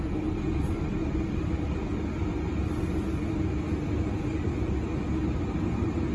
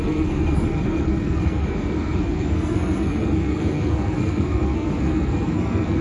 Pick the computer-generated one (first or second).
second